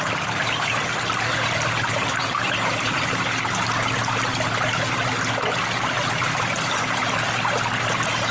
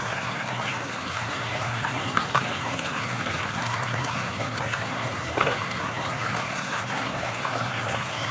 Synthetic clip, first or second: second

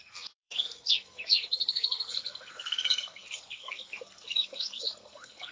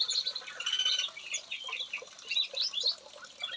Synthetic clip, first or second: first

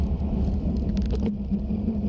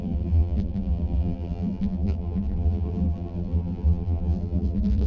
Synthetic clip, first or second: second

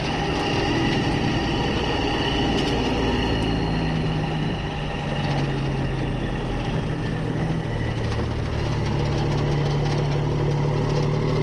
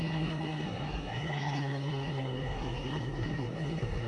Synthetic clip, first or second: second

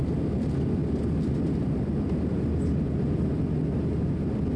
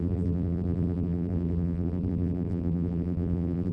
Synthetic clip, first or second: second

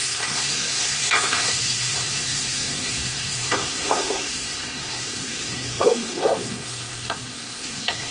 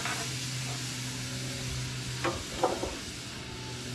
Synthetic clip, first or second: first